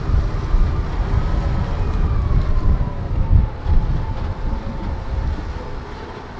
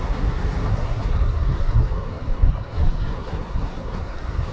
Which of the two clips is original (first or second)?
first